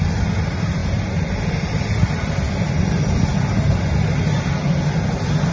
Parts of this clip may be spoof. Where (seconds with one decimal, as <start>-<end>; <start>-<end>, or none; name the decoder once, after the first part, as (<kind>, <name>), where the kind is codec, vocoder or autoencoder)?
none